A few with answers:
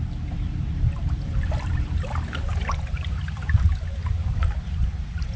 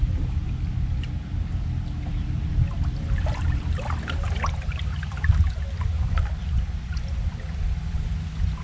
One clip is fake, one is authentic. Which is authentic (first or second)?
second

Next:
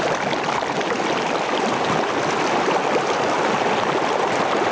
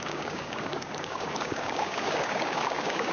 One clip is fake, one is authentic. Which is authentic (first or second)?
first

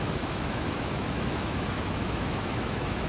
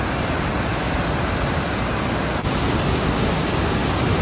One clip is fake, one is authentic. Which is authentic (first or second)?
second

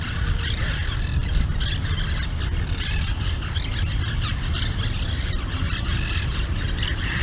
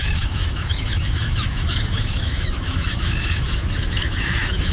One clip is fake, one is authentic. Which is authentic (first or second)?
first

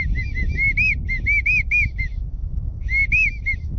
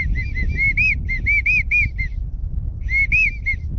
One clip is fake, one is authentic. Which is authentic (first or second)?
second